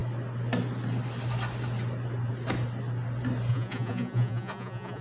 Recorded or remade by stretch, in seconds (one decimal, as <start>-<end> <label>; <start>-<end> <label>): 0.0-3.5 recorded; 3.5-5.0 remade